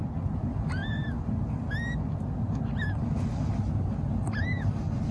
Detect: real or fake real